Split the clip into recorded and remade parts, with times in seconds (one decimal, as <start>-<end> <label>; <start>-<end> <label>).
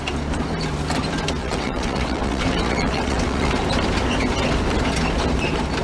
0.0-1.4 recorded; 1.4-3.5 remade; 3.5-5.8 recorded